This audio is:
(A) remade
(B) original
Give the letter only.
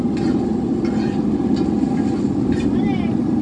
B